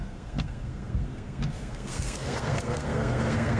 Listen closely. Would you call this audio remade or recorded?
remade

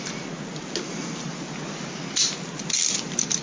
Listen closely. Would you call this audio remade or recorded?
recorded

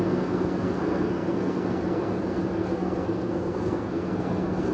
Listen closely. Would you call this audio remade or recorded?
remade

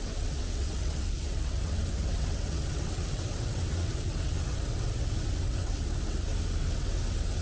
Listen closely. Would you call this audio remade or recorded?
remade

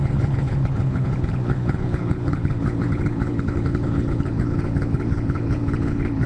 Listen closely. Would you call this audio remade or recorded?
remade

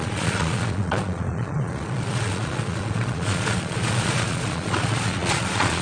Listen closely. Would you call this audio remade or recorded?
remade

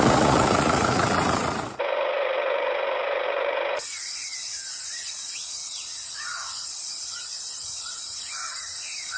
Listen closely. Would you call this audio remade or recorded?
remade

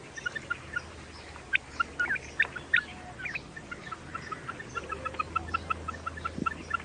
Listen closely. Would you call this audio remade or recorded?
recorded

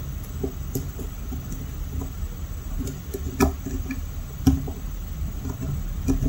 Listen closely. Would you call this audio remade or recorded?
remade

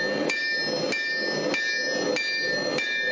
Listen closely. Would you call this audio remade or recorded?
recorded